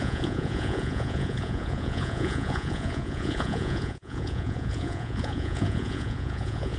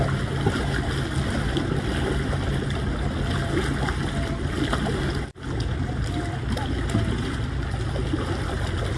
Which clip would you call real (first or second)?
second